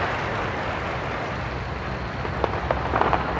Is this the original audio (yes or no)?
yes